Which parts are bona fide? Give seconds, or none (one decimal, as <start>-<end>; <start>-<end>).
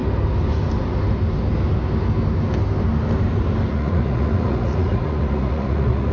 0.0-3.7